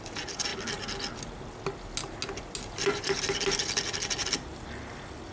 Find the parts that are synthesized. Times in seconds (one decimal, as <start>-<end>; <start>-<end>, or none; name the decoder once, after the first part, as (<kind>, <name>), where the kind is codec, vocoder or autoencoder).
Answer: none